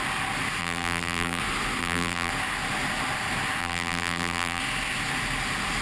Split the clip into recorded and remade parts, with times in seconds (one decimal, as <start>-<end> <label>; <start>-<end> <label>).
0.0-0.6 recorded; 0.6-1.4 remade; 1.4-1.8 recorded; 1.8-2.3 remade; 2.3-3.6 recorded; 3.6-4.6 remade; 4.6-5.8 recorded